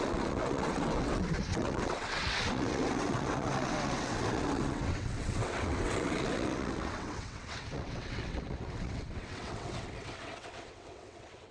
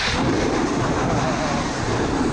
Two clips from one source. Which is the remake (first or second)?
first